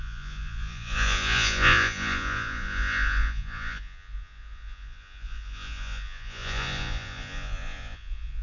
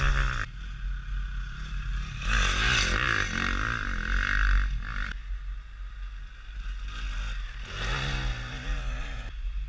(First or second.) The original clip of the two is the second